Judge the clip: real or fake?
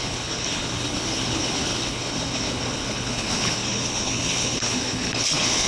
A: fake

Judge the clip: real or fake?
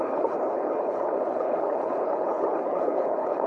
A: fake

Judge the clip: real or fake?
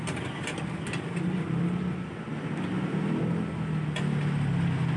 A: real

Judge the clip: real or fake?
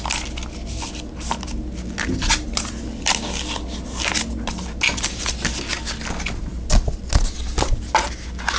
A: real